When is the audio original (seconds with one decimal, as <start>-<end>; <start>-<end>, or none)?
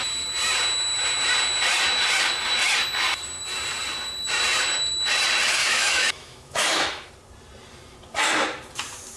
0.0-5.6; 7.1-9.2